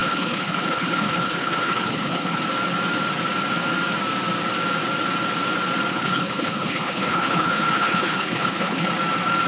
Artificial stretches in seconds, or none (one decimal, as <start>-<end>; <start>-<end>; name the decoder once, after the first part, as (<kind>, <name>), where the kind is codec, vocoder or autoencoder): 0.0-2.4 (codec, HILCodec); 5.9-8.9